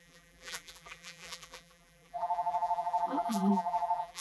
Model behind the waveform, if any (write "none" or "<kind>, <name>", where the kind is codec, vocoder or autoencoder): vocoder, BigVGAN v2